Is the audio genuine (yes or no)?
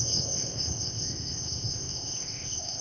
no